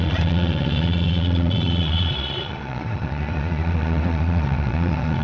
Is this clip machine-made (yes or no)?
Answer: yes